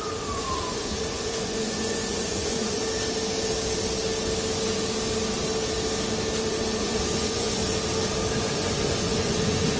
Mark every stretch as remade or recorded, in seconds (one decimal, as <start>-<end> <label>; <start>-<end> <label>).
0.0-2.8 remade; 2.8-6.8 recorded; 6.8-7.6 remade; 7.6-8.4 recorded; 8.4-9.8 remade